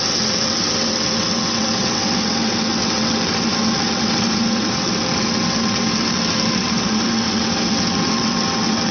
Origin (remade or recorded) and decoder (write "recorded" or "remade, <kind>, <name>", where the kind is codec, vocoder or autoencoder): remade, vocoder, WaveNeXt